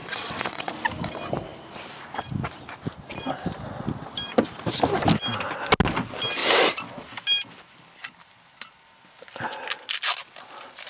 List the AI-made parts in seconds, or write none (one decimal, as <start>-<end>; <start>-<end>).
0.0-0.7